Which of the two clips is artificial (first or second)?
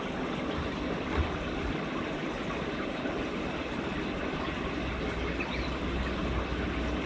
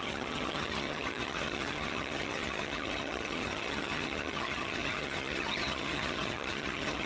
second